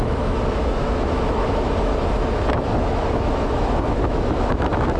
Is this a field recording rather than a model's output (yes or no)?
no